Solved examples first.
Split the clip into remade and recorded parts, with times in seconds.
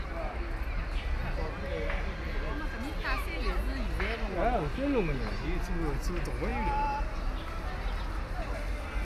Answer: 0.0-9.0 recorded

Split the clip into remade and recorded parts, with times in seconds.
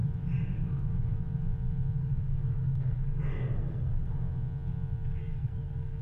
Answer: 0.0-2.0 recorded; 2.0-4.1 remade; 4.1-5.2 recorded; 5.2-6.0 remade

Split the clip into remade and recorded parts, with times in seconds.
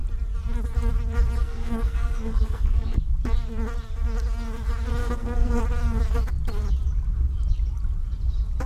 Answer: 0.0-1.4 recorded; 1.4-3.0 remade; 3.0-5.0 recorded; 5.0-5.6 remade; 5.6-8.7 recorded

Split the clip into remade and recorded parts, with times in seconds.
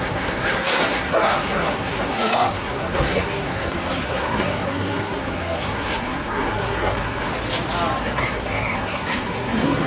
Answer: 0.0-7.3 remade; 7.3-8.0 recorded; 8.0-9.9 remade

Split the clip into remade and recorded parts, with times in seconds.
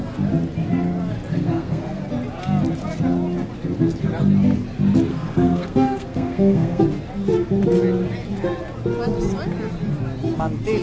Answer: 0.0-1.3 recorded; 1.3-2.0 remade; 2.0-5.1 recorded; 5.1-6.8 remade; 6.8-10.8 recorded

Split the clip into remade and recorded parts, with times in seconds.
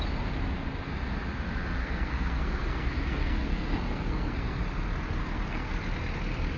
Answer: 0.0-1.8 recorded; 1.8-4.6 remade; 4.6-5.2 recorded; 5.2-5.7 remade; 5.7-6.6 recorded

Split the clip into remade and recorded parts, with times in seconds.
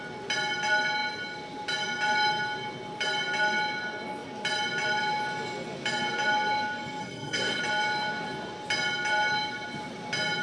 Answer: 0.0-7.0 recorded; 7.0-7.6 remade; 7.6-10.4 recorded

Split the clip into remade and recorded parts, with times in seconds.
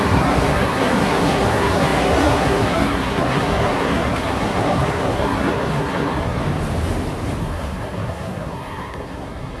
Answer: 0.0-6.4 remade; 6.4-7.4 recorded; 7.4-9.6 remade